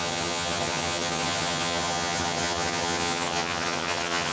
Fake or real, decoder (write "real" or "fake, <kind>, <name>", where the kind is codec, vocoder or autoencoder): fake, vocoder, HiFi-GAN